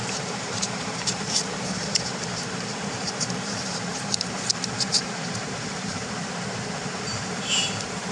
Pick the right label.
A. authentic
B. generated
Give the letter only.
B